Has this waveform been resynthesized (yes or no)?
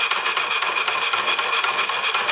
no